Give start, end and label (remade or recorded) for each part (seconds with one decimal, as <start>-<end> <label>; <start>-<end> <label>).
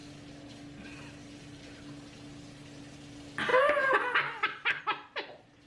0.0-5.7 recorded